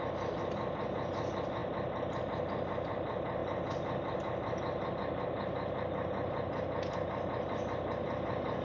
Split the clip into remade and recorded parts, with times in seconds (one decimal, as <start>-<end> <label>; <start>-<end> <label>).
0.0-8.6 recorded